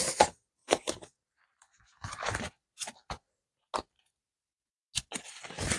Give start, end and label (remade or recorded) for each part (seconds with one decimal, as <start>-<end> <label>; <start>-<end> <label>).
0.0-3.0 remade; 3.0-5.8 recorded